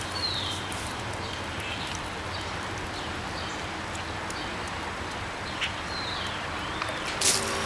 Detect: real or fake real